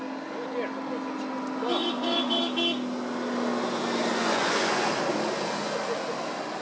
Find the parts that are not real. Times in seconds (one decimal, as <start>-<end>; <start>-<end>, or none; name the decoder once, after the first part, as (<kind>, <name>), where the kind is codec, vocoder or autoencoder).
1.7-2.4 (vocoder, Vocos); 4.1-4.9